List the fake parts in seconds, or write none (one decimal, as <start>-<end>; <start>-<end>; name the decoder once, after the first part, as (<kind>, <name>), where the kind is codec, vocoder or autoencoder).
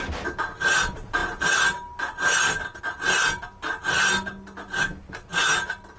none